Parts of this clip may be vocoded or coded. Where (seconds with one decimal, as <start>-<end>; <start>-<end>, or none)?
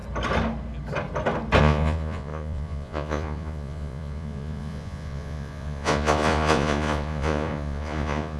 1.6-8.4